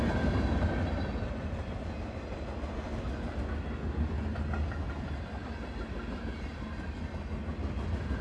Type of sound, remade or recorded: recorded